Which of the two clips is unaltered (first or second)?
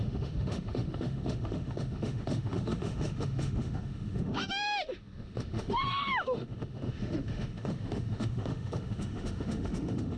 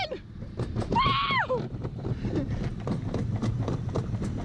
second